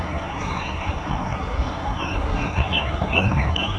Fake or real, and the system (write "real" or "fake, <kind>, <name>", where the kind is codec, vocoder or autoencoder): fake, codec, SNAC